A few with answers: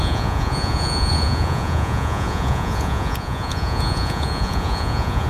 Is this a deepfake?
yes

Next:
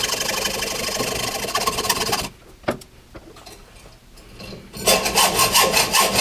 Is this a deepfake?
no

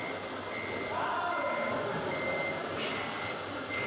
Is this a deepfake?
no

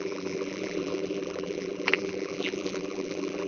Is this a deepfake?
yes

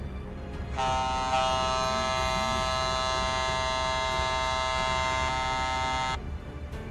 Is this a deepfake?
no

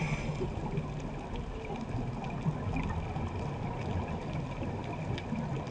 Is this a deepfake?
no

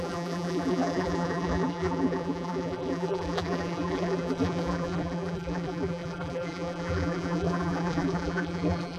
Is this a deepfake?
yes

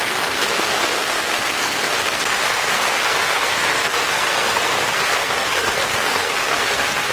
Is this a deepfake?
yes